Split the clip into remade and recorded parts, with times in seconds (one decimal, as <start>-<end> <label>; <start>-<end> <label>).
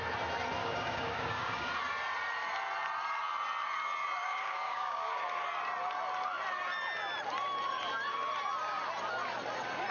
0.0-0.6 recorded; 0.6-1.7 remade; 1.7-4.2 recorded; 4.2-5.2 remade; 5.2-9.9 recorded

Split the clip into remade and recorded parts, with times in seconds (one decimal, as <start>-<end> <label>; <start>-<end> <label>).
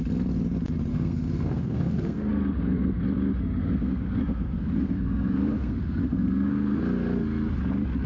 0.0-0.9 recorded; 0.9-3.0 remade; 3.0-3.6 recorded; 3.6-6.8 remade; 6.8-8.1 recorded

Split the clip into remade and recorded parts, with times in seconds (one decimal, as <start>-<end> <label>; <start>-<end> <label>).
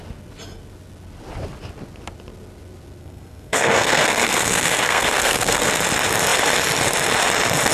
0.0-3.0 recorded; 3.0-5.7 remade; 5.7-7.7 recorded